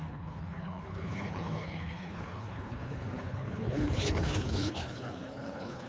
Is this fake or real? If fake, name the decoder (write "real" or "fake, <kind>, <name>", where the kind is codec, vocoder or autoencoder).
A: fake, codec, HILCodec